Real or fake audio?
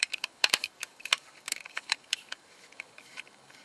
fake